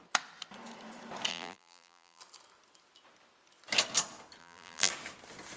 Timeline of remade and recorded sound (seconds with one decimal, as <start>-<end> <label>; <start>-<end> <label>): 0.0-1.3 recorded; 1.3-2.2 remade; 2.2-4.4 recorded; 4.4-4.9 remade; 4.9-5.6 recorded